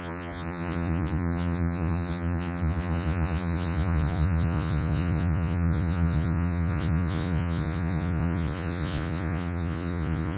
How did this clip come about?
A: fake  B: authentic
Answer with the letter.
A